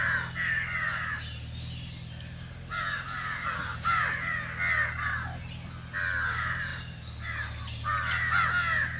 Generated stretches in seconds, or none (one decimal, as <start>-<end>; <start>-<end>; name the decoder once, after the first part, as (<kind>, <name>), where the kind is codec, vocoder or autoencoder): none